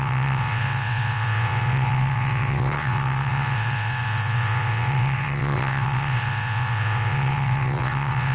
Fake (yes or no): yes